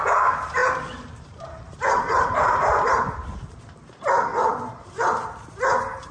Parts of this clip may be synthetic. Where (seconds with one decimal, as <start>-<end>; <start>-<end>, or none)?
0.6-3.6; 4.3-6.1